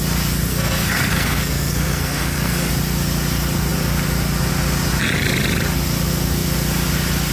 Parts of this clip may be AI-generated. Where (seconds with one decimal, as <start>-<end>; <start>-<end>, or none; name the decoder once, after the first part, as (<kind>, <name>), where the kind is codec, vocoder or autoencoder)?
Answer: 0.5-2.7 (codec, SNAC)